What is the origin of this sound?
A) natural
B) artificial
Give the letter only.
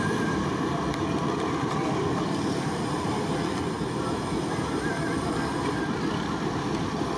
B